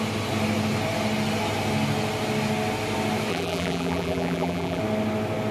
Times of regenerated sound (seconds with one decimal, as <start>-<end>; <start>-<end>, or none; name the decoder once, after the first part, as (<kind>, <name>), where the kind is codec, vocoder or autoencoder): 3.3-4.8 (vocoder, BigVGAN v2)